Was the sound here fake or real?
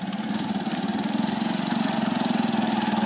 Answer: real